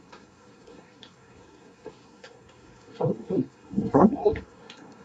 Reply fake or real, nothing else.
fake